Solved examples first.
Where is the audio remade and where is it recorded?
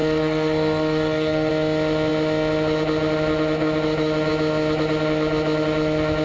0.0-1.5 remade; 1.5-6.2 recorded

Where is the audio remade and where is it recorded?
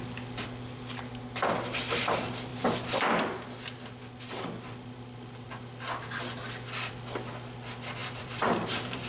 0.0-8.0 recorded; 8.0-9.1 remade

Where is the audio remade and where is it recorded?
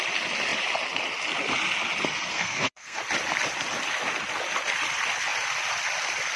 0.0-2.3 recorded; 2.3-3.0 remade; 3.0-6.4 recorded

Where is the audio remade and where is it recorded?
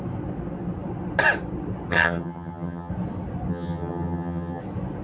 0.0-1.9 recorded; 1.9-2.9 remade; 2.9-3.5 recorded; 3.5-4.6 remade; 4.6-5.0 recorded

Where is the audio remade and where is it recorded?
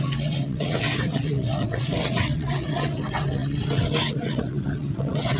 0.0-5.4 remade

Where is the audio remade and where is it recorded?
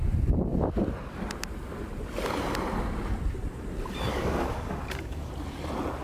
0.0-4.1 recorded; 4.1-5.3 remade; 5.3-6.0 recorded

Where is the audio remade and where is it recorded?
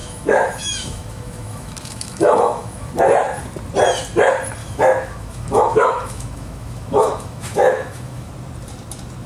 0.0-2.9 remade; 2.9-4.6 recorded; 4.6-8.3 remade; 8.3-9.3 recorded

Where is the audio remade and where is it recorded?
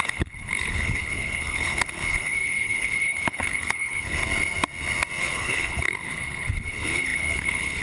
0.0-4.2 remade; 4.2-5.2 recorded; 5.2-7.8 remade